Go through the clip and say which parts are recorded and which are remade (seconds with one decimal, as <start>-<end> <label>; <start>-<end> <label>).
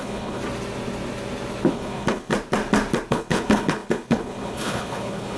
0.0-0.4 remade; 0.4-1.7 recorded; 1.7-2.3 remade; 2.3-3.1 recorded; 3.1-5.4 remade